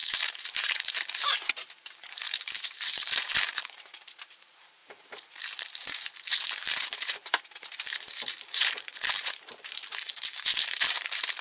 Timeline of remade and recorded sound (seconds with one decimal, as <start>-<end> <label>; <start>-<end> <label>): 0.0-11.4 remade